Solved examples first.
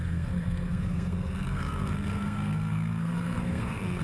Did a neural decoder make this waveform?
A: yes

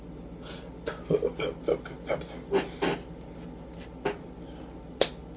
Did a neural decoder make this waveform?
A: no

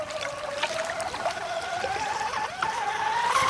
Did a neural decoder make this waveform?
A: yes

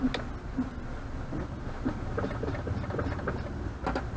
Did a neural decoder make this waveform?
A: no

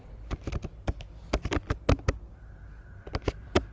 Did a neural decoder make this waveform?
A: no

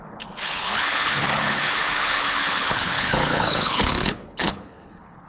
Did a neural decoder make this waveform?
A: yes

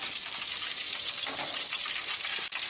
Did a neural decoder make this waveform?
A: no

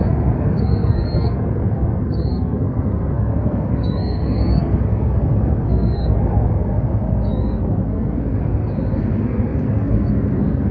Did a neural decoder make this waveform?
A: yes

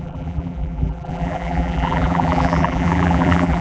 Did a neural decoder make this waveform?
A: yes